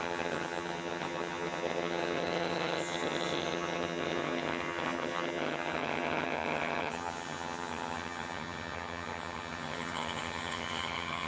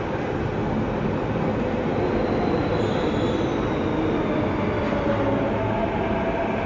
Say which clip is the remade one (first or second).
first